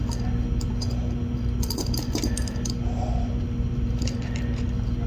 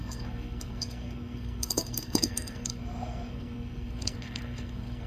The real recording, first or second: first